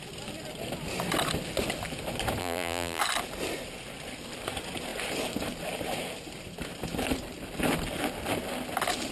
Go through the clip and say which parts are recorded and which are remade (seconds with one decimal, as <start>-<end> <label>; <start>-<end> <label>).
0.0-2.4 recorded; 2.4-3.0 remade; 3.0-9.1 recorded